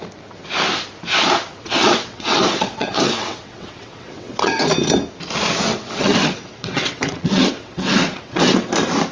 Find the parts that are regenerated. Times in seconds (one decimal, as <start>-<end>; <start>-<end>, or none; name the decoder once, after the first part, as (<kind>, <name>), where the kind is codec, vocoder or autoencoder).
1.6-4.6 (vocoder, WaveNeXt); 5.7-8.7